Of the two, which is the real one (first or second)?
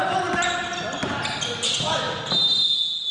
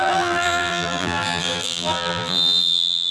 first